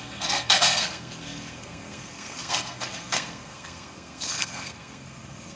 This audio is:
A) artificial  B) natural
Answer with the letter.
A